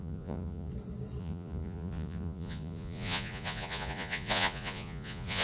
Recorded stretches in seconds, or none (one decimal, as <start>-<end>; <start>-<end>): 0.7-1.2